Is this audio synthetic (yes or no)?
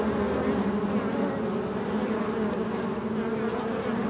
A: no